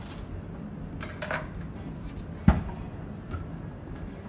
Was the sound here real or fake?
real